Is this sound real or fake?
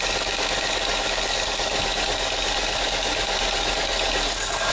fake